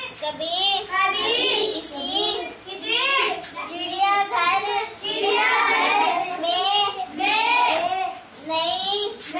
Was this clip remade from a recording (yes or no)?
no